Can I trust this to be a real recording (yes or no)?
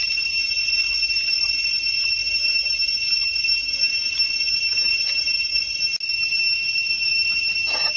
yes